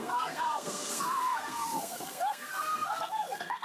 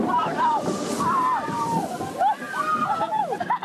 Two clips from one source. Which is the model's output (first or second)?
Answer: first